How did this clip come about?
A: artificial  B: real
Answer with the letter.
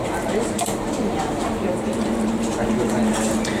B